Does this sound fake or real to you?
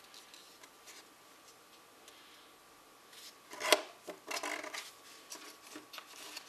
real